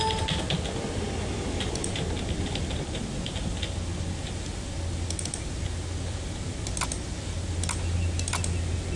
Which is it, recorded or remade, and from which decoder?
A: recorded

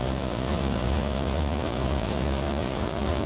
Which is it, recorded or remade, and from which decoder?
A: remade, vocoder, Vocos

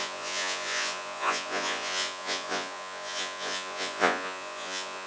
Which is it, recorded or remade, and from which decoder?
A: remade, vocoder, Vocos